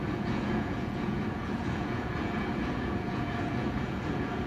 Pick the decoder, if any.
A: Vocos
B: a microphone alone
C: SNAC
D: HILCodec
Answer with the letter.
A